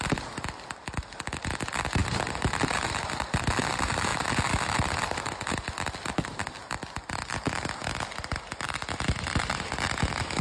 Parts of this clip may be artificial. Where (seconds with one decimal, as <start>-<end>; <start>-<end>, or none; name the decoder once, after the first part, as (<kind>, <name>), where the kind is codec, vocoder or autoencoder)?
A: none